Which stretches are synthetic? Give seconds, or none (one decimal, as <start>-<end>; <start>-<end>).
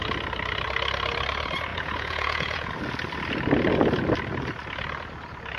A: 1.7-2.7